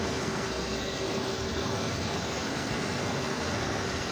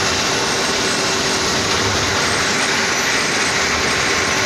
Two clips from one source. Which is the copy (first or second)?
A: first